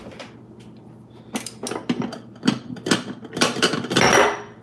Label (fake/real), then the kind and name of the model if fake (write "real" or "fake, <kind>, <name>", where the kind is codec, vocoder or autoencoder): real